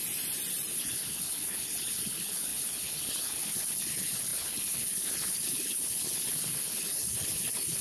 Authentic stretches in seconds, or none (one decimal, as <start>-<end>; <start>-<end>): 0.0-0.7